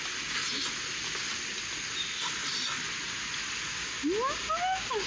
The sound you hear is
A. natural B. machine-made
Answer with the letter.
A